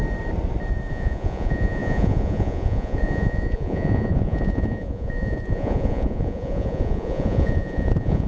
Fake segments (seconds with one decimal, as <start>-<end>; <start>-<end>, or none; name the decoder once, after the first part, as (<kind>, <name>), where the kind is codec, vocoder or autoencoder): 0.9-8.3 (vocoder, Vocos)